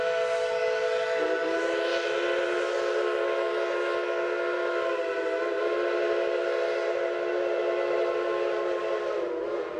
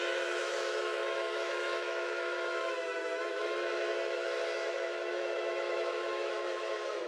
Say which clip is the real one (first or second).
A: first